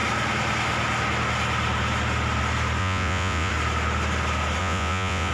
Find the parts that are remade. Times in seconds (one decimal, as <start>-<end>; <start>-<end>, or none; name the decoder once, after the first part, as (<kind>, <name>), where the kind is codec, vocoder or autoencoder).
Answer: 2.8-3.5 (vocoder, Vocos); 4.6-5.3